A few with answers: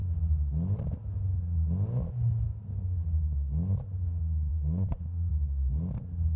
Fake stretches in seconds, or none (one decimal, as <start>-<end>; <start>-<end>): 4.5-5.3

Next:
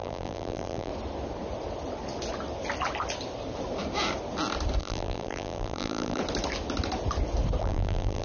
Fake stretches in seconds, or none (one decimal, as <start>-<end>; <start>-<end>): 0.0-0.9; 4.8-6.2; 7.6-8.2

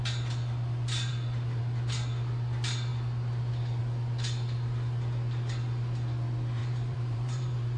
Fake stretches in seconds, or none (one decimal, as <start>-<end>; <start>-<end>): 6.6-7.8